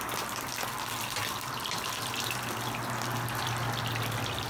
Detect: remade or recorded recorded